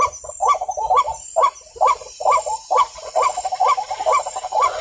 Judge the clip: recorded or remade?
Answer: remade